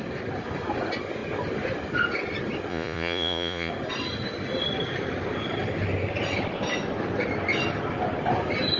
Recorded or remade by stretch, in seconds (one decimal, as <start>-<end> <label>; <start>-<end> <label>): 0.0-2.7 recorded; 2.7-3.7 remade; 3.7-8.8 recorded